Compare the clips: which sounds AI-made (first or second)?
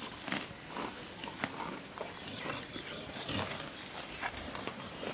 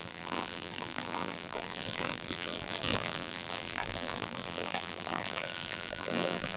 second